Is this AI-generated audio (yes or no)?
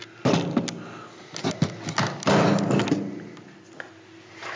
no